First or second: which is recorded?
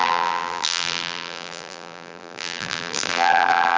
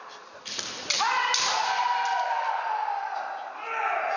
second